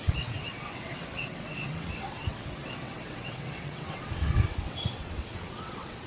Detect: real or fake fake